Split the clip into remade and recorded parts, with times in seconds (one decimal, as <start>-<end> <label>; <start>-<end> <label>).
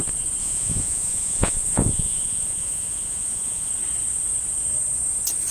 0.0-0.4 recorded; 0.4-3.7 remade; 3.7-5.5 recorded